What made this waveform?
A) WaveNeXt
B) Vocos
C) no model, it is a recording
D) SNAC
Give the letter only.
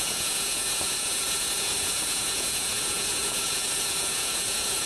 B